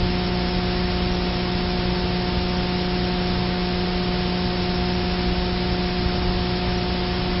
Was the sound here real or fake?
real